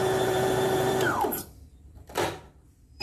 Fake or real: fake